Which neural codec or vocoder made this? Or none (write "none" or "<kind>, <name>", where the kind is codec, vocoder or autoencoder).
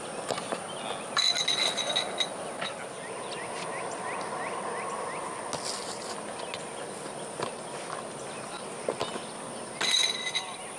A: none